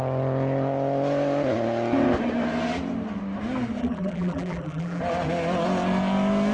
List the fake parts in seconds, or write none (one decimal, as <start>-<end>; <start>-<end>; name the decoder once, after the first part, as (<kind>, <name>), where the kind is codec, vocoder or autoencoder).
3.8-5.0 (vocoder, BigVGAN v2)